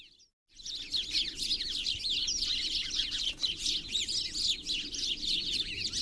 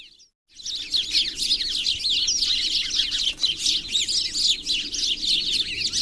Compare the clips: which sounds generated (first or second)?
first